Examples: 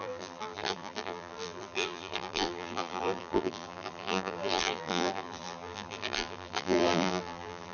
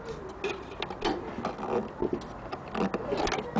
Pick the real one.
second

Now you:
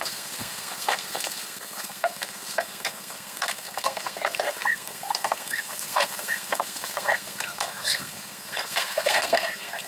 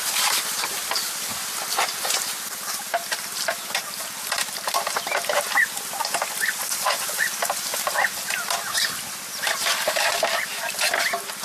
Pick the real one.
second